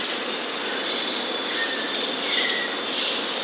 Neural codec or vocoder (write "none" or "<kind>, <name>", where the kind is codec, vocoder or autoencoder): none